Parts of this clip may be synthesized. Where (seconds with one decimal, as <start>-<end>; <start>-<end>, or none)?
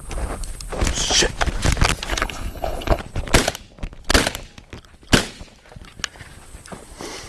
2.1-3.0